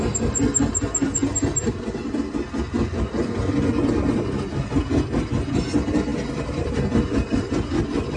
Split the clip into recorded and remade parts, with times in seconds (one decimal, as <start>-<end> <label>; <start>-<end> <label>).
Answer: 0.0-8.2 recorded